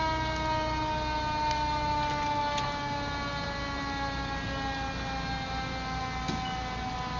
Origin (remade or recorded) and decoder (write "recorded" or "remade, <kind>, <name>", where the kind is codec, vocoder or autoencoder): recorded